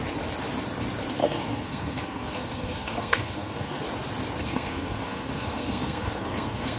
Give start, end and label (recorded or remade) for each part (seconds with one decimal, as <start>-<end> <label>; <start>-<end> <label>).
0.0-1.2 recorded; 1.2-3.8 remade; 3.8-4.4 recorded; 4.4-6.8 remade

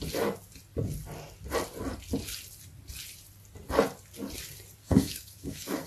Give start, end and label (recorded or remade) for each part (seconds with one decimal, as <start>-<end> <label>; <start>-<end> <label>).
0.0-4.8 recorded; 4.8-5.9 remade

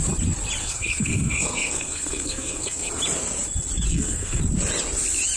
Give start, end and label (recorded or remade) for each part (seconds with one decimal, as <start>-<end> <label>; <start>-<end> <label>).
0.0-0.6 recorded; 0.6-2.9 remade; 2.9-3.9 recorded; 3.9-4.4 remade; 4.4-5.4 recorded

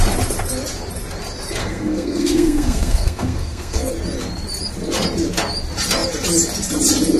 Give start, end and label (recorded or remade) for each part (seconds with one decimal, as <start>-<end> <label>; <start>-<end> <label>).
0.0-1.6 recorded; 1.6-3.9 remade; 3.9-7.2 recorded

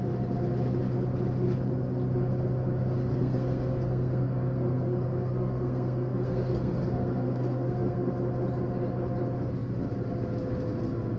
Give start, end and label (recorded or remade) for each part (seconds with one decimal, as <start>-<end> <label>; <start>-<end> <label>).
0.0-3.1 recorded; 3.1-8.1 remade; 8.1-11.2 recorded